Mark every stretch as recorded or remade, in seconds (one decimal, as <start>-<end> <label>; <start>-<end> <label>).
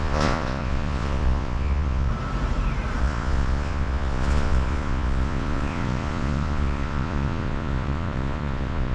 0.0-2.1 remade; 2.1-3.0 recorded; 3.0-8.9 remade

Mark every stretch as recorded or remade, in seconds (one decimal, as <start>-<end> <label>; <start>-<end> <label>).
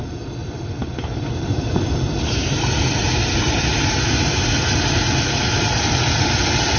0.0-0.4 recorded; 0.4-4.5 remade; 4.5-6.8 recorded